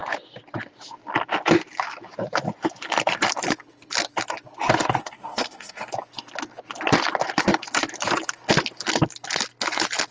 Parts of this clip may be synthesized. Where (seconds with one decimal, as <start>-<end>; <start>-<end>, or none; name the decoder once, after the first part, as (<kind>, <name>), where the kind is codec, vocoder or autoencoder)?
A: 5.0-5.9 (codec, SNAC)